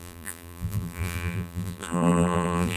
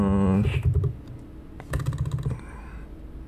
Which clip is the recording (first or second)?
second